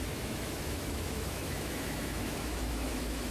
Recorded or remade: remade